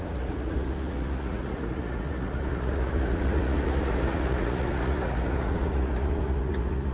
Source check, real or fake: fake